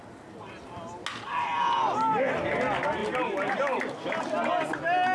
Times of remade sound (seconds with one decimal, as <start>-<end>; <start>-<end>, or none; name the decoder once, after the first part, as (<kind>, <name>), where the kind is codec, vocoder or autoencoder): none